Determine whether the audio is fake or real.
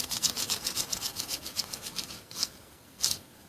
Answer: fake